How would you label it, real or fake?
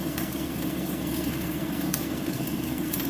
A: fake